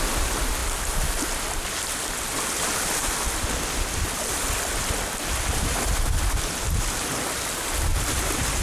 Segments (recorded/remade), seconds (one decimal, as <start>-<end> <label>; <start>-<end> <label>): 0.0-8.6 recorded